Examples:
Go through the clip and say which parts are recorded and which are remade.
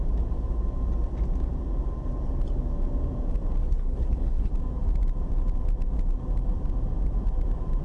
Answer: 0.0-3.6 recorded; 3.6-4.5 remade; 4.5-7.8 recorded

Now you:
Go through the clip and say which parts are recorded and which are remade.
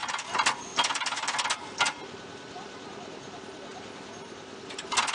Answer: 0.0-5.1 recorded